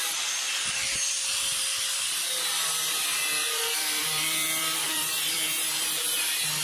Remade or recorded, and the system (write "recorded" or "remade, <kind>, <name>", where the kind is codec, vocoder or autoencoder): remade, vocoder, BigVGAN v2